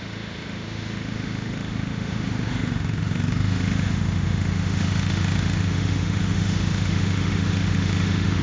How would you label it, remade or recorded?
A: remade